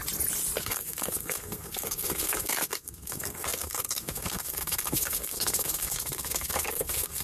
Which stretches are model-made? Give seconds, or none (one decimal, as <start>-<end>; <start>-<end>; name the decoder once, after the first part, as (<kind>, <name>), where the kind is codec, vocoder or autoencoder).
0.6-7.2 (codec, SNAC)